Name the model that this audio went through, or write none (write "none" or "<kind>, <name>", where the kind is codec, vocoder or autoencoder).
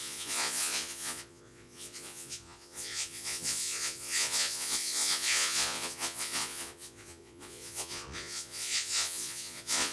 vocoder, Vocos